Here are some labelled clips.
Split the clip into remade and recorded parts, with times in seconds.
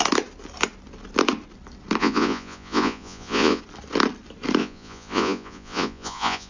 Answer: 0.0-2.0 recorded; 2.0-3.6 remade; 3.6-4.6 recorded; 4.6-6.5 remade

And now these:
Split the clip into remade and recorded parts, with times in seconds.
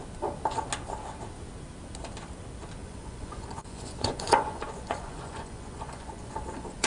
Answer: 0.0-2.8 recorded; 2.8-6.9 remade